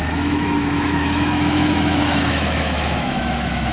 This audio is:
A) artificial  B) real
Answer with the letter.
A